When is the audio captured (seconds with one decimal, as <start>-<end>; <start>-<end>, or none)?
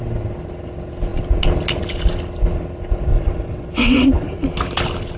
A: 0.0-3.1; 4.3-5.2